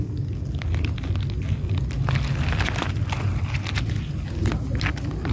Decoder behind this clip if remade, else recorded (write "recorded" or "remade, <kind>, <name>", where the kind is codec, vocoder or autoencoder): recorded